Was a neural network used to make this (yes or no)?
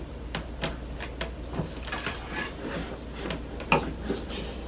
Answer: no